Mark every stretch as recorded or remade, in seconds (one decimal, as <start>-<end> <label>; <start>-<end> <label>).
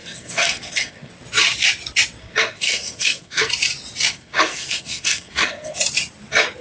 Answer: 0.0-1.1 remade; 1.1-2.2 recorded; 2.2-3.5 remade; 3.5-4.1 recorded; 4.1-5.8 remade; 5.8-6.6 recorded